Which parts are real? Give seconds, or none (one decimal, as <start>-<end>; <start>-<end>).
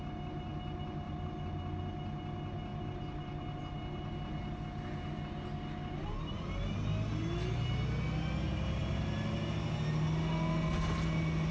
0.0-11.5